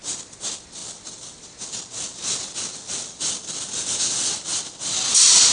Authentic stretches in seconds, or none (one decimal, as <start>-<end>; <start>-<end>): 0.0-5.5